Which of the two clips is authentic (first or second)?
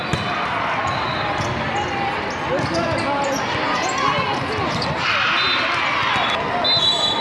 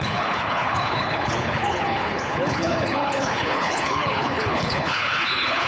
first